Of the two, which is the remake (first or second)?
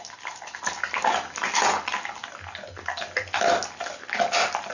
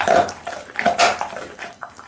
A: second